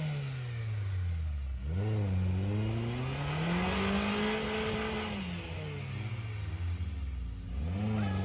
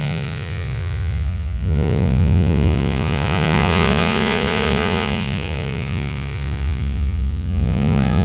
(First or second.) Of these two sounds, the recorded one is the first